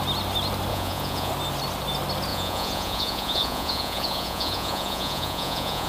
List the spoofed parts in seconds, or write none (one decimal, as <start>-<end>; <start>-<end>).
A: 0.7-1.3; 2.3-5.9

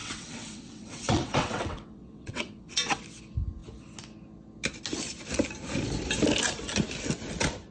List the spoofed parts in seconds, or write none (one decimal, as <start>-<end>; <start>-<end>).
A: 0.0-3.0

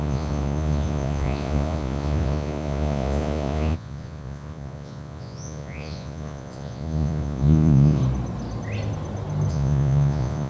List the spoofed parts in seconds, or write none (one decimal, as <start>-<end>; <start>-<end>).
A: 0.0-8.0; 9.5-10.5

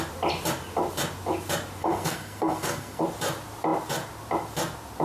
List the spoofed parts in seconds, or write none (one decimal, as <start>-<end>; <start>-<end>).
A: 1.8-3.0

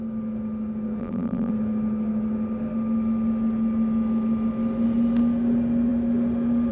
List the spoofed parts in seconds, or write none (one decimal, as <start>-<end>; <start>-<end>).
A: 1.0-1.5

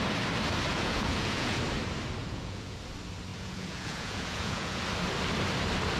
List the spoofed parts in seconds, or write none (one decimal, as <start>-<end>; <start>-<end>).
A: 0.7-1.6; 2.2-2.8; 3.3-4.8

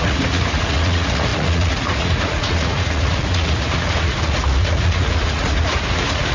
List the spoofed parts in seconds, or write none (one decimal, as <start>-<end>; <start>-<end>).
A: 0.0-6.3